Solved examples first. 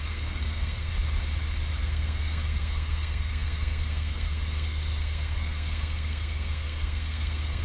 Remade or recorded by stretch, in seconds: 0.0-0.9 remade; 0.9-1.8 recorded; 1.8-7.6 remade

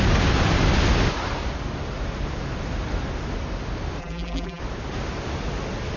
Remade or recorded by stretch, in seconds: 0.0-4.0 recorded; 4.0-4.6 remade; 4.6-6.0 recorded

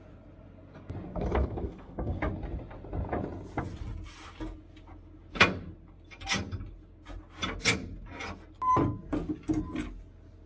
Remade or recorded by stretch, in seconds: 0.0-1.1 recorded; 1.1-2.2 remade; 2.2-10.5 recorded

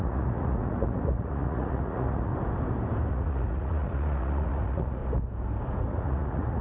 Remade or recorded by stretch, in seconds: 0.0-2.3 remade; 2.3-3.1 recorded; 3.1-5.0 remade; 5.0-5.9 recorded; 5.9-6.6 remade

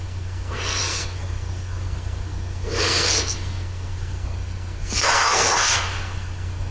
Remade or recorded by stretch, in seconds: 0.0-6.7 remade

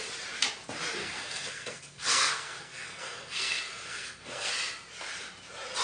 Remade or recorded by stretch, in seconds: 0.0-1.0 recorded; 1.0-4.5 remade; 4.5-5.8 recorded